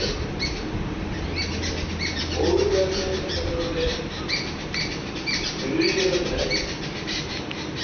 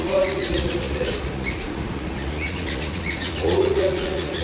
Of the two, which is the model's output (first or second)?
second